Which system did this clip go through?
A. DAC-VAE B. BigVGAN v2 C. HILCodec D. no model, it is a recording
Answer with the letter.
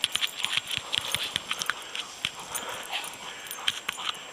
D